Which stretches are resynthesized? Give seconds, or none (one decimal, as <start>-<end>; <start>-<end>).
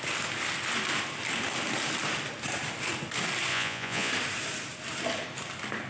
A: 3.5-4.1